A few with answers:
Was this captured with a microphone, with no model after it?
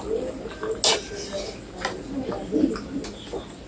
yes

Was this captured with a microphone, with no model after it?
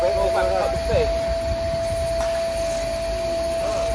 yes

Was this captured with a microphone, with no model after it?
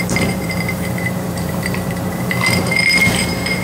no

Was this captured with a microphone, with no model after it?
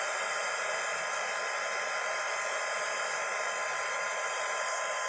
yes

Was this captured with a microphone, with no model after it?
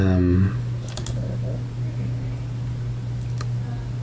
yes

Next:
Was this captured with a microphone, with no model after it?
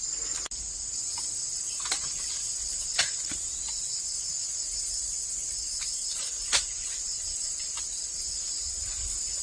yes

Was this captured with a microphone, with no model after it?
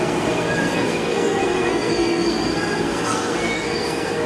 no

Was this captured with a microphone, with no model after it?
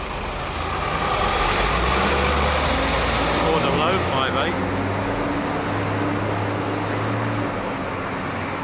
yes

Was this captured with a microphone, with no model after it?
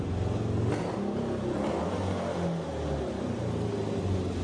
yes